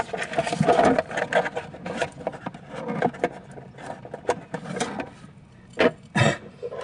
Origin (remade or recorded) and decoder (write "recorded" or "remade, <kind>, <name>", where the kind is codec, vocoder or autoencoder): recorded